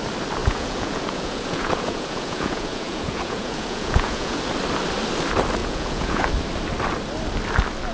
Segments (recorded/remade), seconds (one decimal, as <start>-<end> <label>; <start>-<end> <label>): 0.0-0.4 recorded; 0.4-4.4 remade; 4.4-5.6 recorded; 5.6-6.3 remade; 6.3-7.9 recorded